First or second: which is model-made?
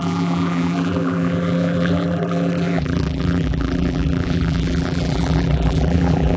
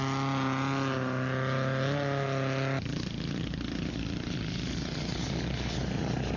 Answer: first